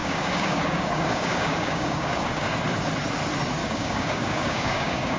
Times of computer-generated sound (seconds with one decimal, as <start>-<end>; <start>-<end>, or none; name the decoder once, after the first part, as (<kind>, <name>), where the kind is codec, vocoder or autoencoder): 0.0-2.6 (codec, DAC); 3.6-5.2